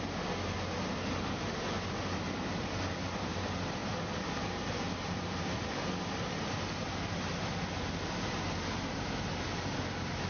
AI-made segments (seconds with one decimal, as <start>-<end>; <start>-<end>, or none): 3.8-5.6